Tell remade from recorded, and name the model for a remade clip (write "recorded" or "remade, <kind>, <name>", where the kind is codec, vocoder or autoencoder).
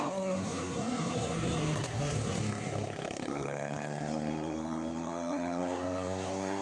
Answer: remade, codec, SNAC